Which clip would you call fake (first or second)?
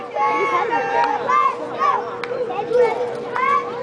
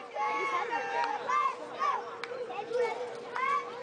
second